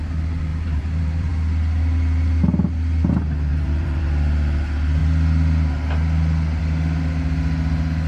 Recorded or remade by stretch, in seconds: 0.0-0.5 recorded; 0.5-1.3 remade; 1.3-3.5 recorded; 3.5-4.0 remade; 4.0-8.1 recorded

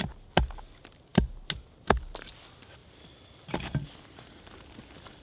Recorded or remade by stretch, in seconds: 0.0-2.8 recorded; 2.8-4.4 remade; 4.4-5.2 recorded

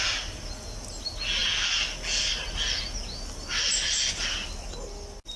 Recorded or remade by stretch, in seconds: 0.0-5.4 recorded

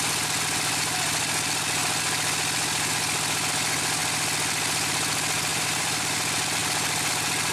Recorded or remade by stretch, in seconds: 0.0-5.5 recorded; 5.5-6.0 remade; 6.0-7.5 recorded